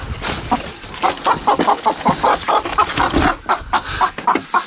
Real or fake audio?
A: real